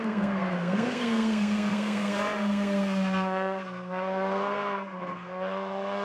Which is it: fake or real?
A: fake